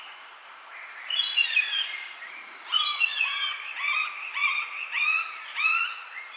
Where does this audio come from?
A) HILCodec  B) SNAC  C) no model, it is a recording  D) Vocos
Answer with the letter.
D